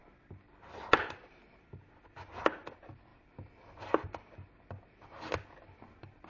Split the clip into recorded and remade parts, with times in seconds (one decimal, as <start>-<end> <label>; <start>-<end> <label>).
0.0-6.3 recorded